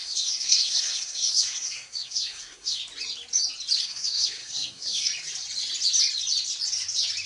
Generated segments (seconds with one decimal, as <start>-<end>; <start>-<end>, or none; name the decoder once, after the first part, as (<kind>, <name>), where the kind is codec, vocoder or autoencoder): 0.0-2.8 (codec, SNAC); 3.8-5.1